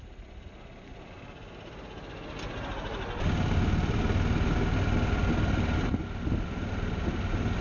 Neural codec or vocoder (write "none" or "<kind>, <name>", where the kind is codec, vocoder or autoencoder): none